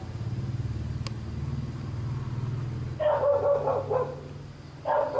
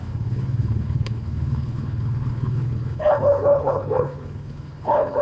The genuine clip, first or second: first